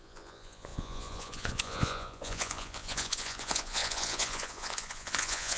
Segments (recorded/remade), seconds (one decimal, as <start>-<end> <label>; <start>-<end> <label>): 0.0-5.6 remade